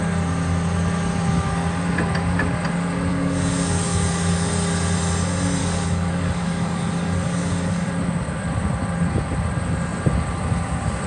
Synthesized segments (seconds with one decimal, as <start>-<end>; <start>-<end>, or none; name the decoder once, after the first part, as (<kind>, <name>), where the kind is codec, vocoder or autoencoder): 3.1-4.5 (codec, DAC); 5.6-7.9